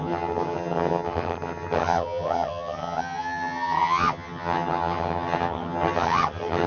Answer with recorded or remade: remade